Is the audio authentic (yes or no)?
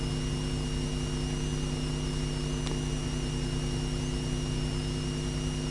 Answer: yes